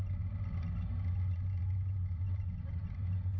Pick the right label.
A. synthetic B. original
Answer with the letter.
B